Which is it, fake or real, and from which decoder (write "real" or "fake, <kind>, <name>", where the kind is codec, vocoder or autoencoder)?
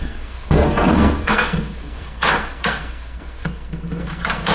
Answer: fake, codec, SNAC